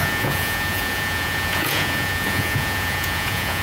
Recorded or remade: remade